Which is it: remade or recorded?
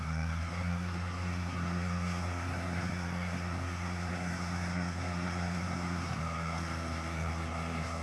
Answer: remade